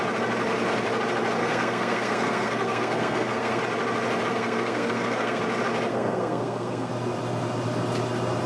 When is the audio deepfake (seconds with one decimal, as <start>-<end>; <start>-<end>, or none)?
1.4-3.6; 4.3-5.4; 5.9-6.9